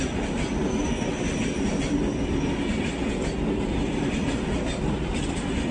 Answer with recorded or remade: recorded